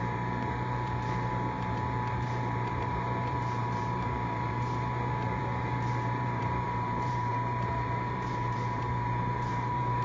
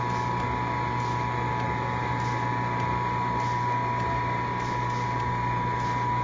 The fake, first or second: first